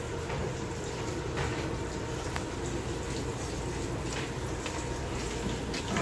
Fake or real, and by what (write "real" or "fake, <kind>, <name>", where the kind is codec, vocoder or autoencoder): fake, vocoder, BigVGAN v2